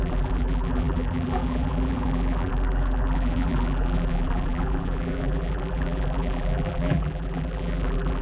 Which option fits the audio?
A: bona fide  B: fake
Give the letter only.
B